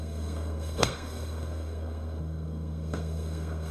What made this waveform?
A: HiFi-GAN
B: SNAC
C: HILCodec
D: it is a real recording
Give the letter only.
B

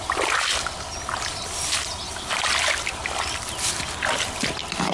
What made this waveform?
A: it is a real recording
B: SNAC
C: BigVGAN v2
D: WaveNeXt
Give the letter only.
A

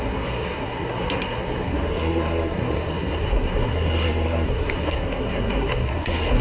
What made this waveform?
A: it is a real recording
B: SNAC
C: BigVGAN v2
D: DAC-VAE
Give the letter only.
B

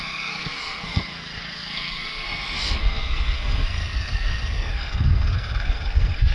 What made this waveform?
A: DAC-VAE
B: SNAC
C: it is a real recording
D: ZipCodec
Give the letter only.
B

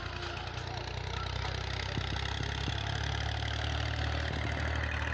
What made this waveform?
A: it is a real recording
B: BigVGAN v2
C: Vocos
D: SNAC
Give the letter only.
A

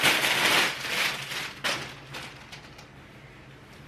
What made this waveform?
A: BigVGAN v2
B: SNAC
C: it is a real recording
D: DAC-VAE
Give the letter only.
C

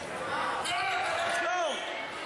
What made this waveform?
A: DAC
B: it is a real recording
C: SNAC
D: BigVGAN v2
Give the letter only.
B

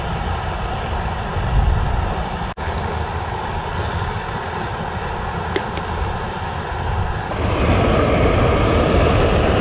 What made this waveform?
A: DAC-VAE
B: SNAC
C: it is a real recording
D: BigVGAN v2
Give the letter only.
C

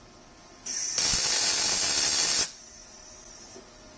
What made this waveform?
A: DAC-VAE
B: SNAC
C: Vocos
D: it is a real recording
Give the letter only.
D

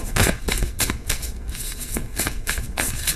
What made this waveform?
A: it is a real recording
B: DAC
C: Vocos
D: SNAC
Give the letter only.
D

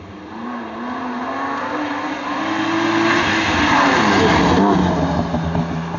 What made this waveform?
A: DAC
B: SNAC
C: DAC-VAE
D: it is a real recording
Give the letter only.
D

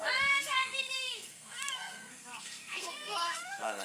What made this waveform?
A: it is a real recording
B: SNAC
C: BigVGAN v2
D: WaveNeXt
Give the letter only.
B